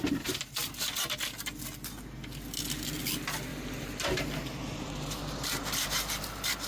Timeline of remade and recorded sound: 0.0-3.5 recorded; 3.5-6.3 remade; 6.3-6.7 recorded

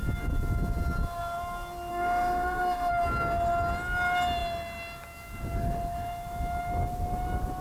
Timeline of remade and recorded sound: 0.0-1.9 recorded; 1.9-2.9 remade; 2.9-7.6 recorded

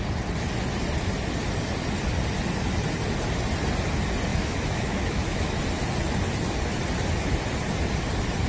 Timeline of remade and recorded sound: 0.0-4.3 recorded; 4.3-5.6 remade; 5.6-8.5 recorded

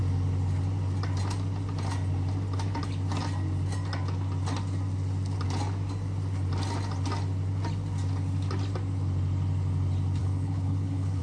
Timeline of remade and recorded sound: 0.0-10.2 recorded; 10.2-11.2 remade

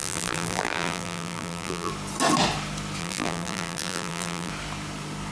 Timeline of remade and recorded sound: 0.0-1.9 remade; 1.9-3.0 recorded; 3.0-4.5 remade; 4.5-5.3 recorded

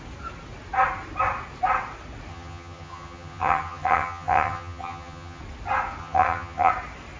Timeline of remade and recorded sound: 0.0-2.3 recorded; 2.3-5.4 remade; 5.4-6.0 recorded; 6.0-6.7 remade; 6.7-7.2 recorded

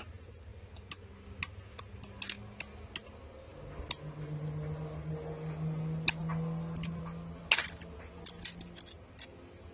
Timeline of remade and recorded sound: 0.0-9.7 recorded